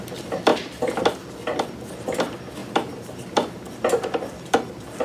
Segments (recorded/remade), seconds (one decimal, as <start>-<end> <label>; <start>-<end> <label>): 0.0-2.6 recorded; 2.6-5.0 remade